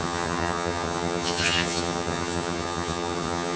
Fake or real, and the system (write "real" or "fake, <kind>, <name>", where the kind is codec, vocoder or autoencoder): fake, vocoder, HiFi-GAN